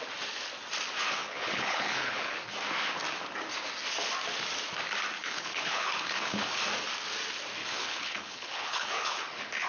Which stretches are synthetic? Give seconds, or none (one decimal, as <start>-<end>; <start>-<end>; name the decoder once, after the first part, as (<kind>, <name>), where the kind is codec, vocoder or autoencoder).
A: 1.2-2.4 (codec, HILCodec); 5.2-6.6; 7.6-9.7